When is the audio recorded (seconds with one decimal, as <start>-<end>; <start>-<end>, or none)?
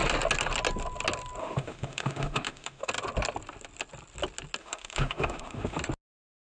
0.0-1.4; 2.9-4.6; 5.8-6.5